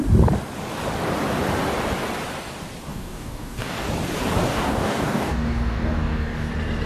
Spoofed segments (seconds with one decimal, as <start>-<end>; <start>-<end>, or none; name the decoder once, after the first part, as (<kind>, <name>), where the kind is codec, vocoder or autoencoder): 2.9-3.9 (codec, DAC); 4.5-6.5